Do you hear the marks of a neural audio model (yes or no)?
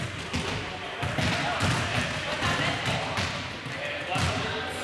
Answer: no